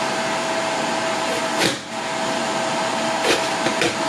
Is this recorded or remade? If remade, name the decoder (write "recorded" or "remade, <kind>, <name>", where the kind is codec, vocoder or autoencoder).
recorded